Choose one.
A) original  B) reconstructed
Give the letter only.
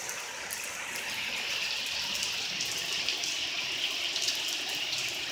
A